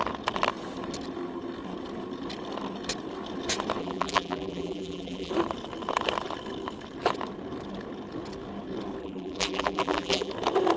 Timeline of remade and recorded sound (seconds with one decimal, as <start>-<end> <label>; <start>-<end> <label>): 0.0-3.8 recorded; 3.8-5.3 remade; 5.3-9.0 recorded; 9.0-10.3 remade; 10.3-10.8 recorded